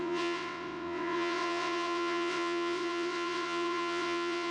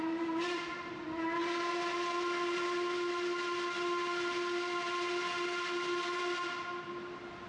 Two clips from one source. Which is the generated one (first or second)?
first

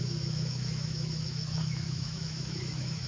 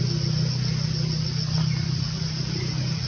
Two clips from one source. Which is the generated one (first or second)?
first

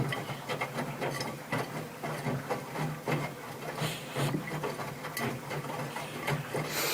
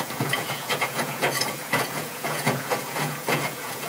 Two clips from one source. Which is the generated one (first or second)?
second